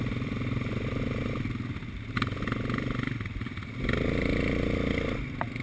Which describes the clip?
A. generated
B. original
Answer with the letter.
B